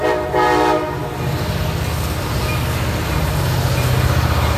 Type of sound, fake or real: real